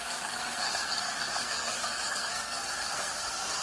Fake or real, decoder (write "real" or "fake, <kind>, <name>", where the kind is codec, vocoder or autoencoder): fake, codec, SNAC